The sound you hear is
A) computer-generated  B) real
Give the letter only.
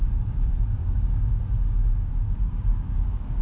A